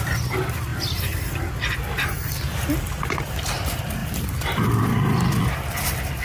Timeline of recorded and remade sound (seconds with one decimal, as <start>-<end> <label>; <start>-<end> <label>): 0.0-0.7 remade; 0.7-2.8 recorded; 2.8-6.2 remade